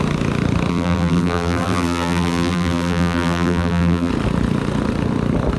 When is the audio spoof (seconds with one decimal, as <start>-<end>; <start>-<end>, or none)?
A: 0.7-4.1